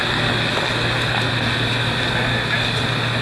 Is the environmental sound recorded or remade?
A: recorded